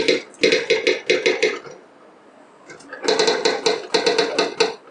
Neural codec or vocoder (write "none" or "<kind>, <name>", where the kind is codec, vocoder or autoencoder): none